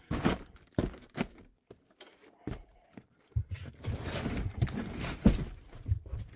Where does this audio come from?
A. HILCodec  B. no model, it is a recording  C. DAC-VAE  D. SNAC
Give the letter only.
B